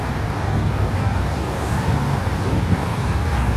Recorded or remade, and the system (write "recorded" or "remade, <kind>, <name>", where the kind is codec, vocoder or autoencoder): remade, codec, DAC